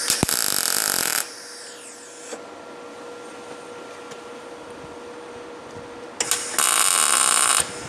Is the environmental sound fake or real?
real